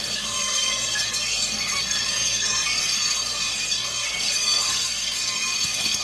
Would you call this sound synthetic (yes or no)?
yes